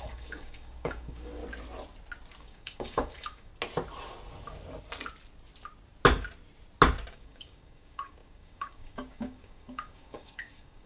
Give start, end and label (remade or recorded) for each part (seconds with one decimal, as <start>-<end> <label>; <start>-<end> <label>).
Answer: 0.0-1.4 remade; 1.4-2.4 recorded; 2.4-3.5 remade; 3.5-7.1 recorded; 7.1-10.9 remade